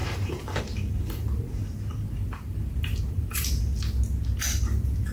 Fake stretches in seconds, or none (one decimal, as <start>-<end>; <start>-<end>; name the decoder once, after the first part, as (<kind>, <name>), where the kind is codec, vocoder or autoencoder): 0.0-3.7 (vocoder, BigVGAN v2); 4.4-5.1